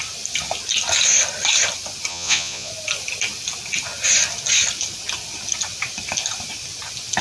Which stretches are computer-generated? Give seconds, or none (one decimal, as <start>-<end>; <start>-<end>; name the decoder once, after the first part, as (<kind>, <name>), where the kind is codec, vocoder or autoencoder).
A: 2.1-2.7 (vocoder, Vocos)